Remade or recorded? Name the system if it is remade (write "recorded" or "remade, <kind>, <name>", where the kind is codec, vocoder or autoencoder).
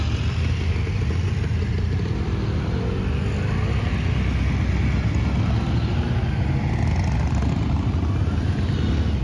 recorded